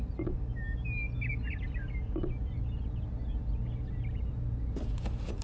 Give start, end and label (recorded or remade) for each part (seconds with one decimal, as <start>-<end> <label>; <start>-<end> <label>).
0.0-5.4 recorded